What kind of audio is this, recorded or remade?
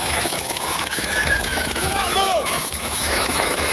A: remade